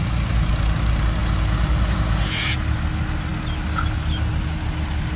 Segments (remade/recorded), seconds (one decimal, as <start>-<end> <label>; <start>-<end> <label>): 0.0-5.2 recorded